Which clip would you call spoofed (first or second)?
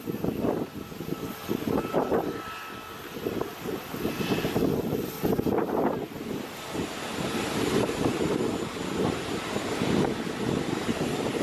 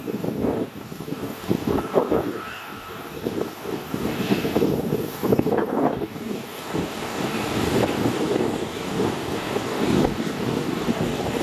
second